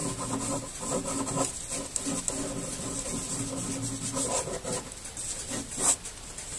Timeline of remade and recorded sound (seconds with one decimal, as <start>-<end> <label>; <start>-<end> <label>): 0.0-6.6 recorded